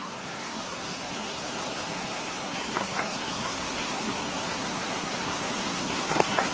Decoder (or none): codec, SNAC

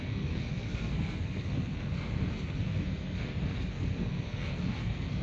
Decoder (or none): codec, SNAC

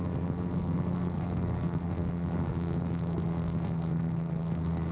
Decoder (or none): codec, SNAC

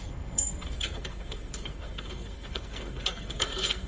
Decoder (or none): codec, SNAC